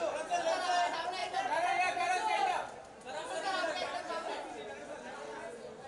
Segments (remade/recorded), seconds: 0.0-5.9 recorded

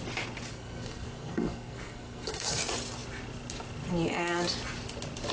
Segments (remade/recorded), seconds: 0.0-0.5 recorded; 0.5-2.6 remade; 2.6-5.3 recorded

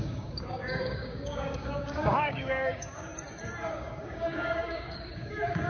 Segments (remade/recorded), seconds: 0.0-3.1 remade; 3.1-3.7 recorded; 3.7-5.7 remade

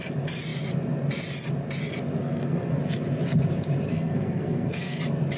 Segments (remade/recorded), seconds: 0.0-2.2 recorded; 2.2-2.8 remade; 2.8-3.9 recorded; 3.9-5.0 remade; 5.0-5.4 recorded

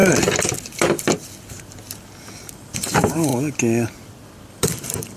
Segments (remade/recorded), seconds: 0.0-2.2 recorded; 2.2-3.3 remade; 3.3-4.5 recorded; 4.5-5.2 remade